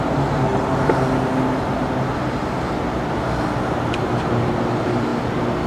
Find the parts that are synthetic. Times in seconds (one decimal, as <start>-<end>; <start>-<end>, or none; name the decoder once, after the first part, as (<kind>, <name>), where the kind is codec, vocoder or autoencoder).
0.0-0.5 (vocoder, BigVGAN v2); 3.9-5.1